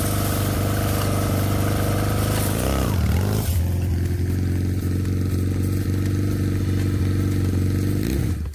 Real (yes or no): yes